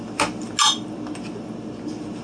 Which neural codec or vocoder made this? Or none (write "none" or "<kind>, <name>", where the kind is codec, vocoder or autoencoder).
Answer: none